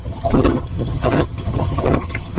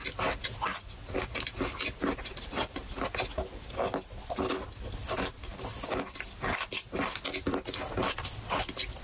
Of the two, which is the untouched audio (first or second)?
second